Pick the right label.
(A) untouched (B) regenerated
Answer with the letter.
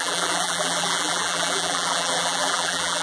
B